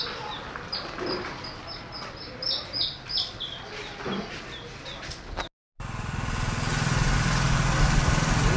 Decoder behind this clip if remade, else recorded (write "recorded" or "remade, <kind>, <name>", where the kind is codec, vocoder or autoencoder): recorded